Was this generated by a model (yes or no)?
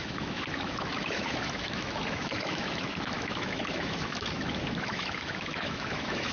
yes